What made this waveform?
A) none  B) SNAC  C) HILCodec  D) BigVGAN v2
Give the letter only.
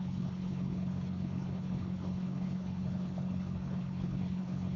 C